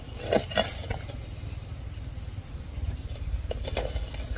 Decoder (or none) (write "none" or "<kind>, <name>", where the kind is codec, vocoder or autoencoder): none